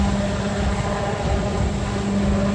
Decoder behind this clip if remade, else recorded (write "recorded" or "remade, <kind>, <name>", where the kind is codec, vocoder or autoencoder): recorded